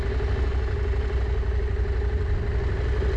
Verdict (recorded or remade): recorded